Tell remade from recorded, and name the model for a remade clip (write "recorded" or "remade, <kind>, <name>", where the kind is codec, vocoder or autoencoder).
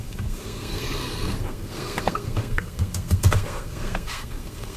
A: remade, codec, SNAC